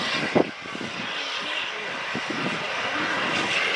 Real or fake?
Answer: real